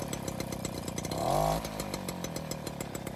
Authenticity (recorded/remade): recorded